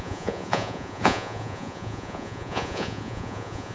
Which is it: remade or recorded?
remade